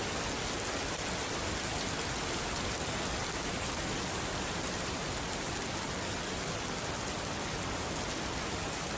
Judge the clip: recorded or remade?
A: recorded